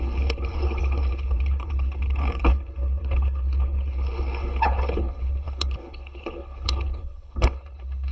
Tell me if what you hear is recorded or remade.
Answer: remade